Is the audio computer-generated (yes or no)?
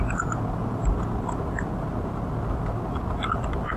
no